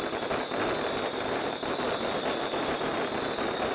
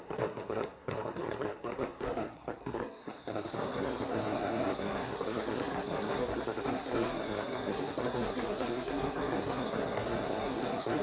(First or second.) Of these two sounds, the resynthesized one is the second